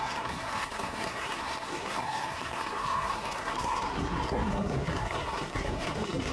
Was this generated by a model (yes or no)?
yes